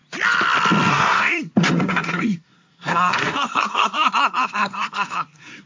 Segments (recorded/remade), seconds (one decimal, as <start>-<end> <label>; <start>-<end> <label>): 0.0-0.9 recorded; 0.9-5.7 remade